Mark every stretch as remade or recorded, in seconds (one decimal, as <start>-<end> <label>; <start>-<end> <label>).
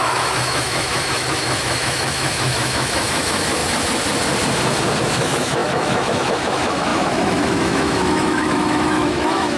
0.0-3.6 remade; 3.6-5.0 recorded; 5.0-9.6 remade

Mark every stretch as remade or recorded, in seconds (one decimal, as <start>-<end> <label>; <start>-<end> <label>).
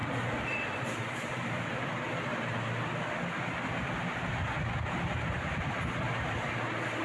0.0-1.7 remade; 1.7-7.0 recorded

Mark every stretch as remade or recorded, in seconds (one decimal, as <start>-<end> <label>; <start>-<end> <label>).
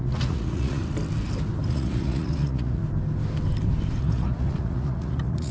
0.0-0.8 remade; 0.8-1.7 recorded; 1.7-2.8 remade; 2.8-4.0 recorded; 4.0-5.5 remade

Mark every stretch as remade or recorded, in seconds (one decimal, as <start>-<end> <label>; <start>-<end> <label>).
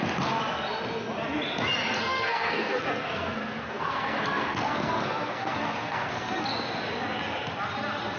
0.0-2.0 recorded; 2.0-6.4 remade; 6.4-8.2 recorded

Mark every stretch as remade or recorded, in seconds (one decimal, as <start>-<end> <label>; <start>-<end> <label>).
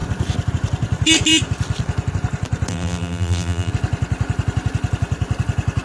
0.0-2.7 recorded; 2.7-3.7 remade; 3.7-5.8 recorded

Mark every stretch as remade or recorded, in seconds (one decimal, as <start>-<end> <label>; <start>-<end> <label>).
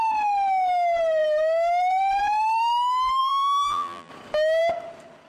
0.0-3.2 recorded; 3.2-4.1 remade; 4.1-5.3 recorded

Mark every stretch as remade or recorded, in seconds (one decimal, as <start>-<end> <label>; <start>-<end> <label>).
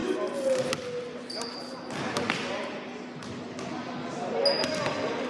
0.0-5.3 recorded